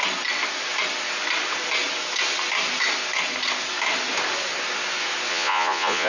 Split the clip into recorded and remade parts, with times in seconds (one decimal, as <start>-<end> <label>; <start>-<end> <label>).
0.0-5.3 recorded; 5.3-6.1 remade